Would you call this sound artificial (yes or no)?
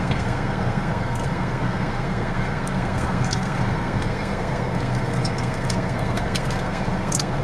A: yes